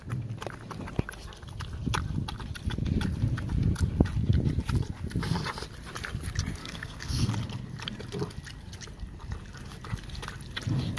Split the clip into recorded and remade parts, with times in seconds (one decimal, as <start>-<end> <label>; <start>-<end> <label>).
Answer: 0.0-6.6 recorded; 6.6-7.3 remade; 7.3-11.0 recorded